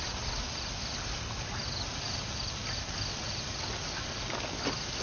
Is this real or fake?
real